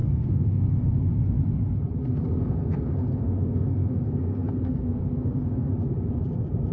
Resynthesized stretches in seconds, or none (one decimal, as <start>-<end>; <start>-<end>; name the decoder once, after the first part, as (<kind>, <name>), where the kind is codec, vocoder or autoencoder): 0.0-1.0 (codec, SNAC); 2.0-5.7